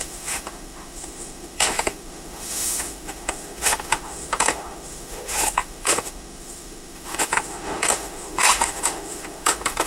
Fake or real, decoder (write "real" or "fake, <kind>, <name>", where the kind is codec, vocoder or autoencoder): fake, autoencoder, DAC-VAE